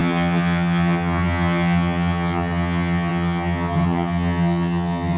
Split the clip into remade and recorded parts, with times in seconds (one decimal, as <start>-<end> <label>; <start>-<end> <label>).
0.0-5.2 remade